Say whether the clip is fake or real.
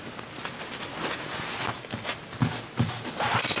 real